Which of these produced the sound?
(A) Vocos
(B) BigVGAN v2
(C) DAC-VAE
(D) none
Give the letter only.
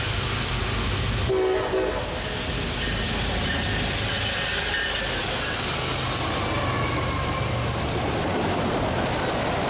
D